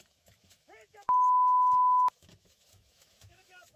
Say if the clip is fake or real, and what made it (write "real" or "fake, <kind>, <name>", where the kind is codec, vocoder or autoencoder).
fake, autoencoder, DAC-VAE